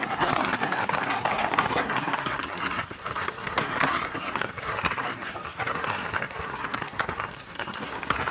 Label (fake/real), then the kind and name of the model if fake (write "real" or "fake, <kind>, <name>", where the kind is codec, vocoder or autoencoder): fake, codec, SNAC